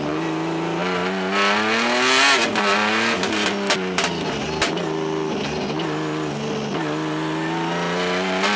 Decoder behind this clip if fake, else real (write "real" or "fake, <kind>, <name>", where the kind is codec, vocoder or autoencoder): real